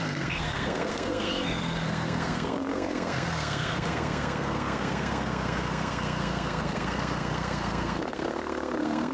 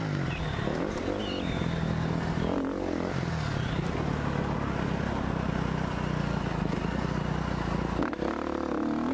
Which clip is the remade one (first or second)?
first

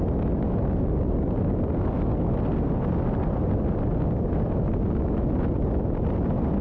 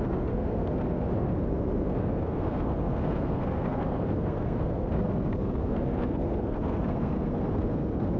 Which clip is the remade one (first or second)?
second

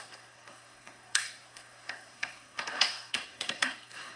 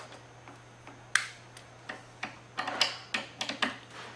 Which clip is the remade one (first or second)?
first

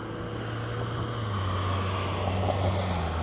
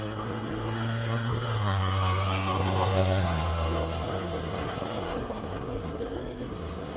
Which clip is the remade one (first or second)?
second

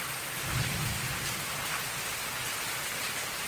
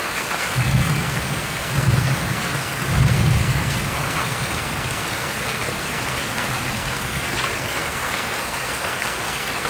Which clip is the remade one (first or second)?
second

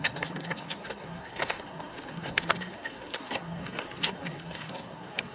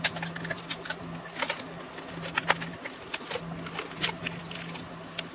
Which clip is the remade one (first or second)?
first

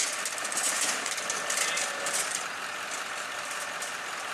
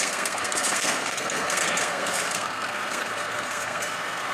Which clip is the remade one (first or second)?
second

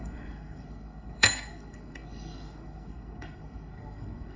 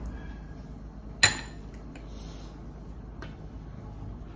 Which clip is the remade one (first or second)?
first